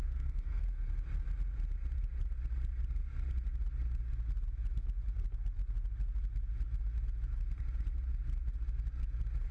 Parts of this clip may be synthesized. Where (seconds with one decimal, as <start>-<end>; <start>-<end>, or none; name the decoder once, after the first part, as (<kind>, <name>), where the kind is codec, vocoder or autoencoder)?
0.0-0.6 (codec, SNAC)